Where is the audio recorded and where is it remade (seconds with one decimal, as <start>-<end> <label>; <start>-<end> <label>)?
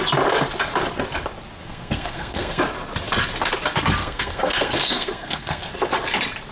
0.0-1.6 recorded; 1.6-2.6 remade; 2.6-4.0 recorded; 4.0-5.7 remade; 5.7-6.5 recorded